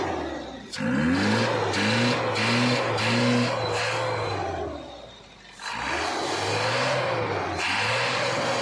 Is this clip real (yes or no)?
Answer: yes